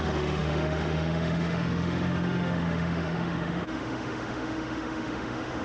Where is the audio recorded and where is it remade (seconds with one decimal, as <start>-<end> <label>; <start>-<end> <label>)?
0.0-5.6 remade

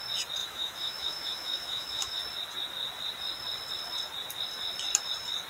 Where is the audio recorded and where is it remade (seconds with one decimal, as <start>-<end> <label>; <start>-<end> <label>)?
0.0-0.4 recorded; 0.4-2.2 remade; 2.2-5.5 recorded

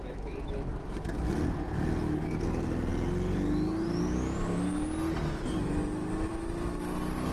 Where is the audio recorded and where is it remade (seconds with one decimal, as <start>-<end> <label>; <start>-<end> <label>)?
0.0-1.2 remade; 1.2-7.3 recorded

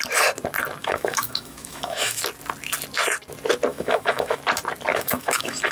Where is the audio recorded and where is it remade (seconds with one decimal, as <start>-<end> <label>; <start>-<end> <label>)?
0.0-0.8 recorded; 0.8-2.2 remade; 2.2-3.7 recorded; 3.7-4.4 remade; 4.4-4.9 recorded; 4.9-5.7 remade